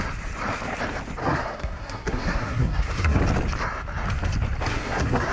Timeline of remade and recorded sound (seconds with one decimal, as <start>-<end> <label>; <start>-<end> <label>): 0.0-1.2 recorded; 1.2-3.2 remade; 3.2-4.7 recorded; 4.7-5.3 remade